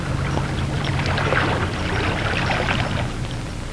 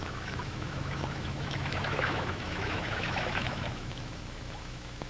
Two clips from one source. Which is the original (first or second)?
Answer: first